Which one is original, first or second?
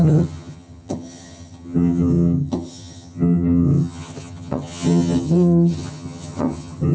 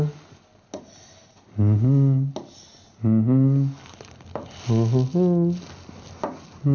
second